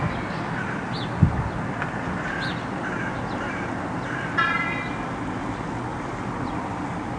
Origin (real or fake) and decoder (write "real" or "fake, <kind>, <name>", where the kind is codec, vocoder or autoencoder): real